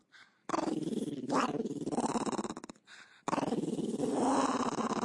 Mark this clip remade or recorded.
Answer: recorded